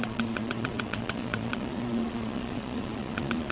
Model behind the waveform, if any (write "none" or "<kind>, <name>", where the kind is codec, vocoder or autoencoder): vocoder, Vocos